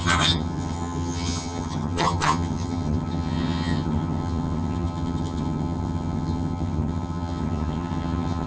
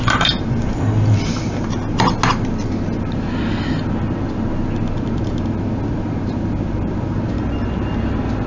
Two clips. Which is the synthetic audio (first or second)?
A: first